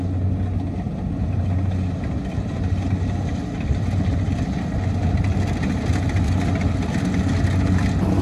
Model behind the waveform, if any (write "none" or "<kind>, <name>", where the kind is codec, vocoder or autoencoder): none